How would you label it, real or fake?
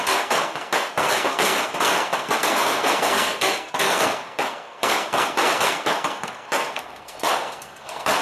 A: fake